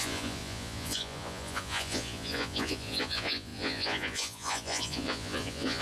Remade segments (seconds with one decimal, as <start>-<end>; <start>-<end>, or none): 0.0-5.8